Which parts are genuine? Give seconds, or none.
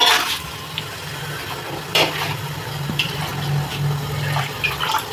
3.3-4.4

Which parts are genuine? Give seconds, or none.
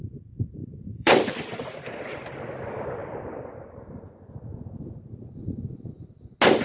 0.0-0.6; 2.4-3.0; 3.6-6.6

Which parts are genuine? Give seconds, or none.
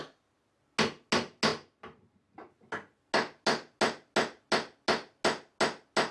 0.0-1.5; 2.5-6.1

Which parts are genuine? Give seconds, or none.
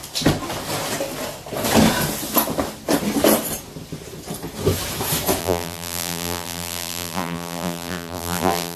0.0-5.4